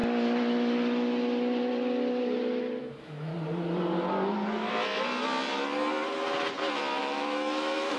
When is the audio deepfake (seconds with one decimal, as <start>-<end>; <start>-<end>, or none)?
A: 2.8-3.3; 7.0-8.0